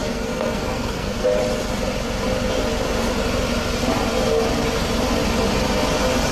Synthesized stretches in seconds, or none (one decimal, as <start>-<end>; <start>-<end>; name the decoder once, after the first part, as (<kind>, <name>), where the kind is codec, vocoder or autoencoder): 0.0-1.4 (codec, SNAC)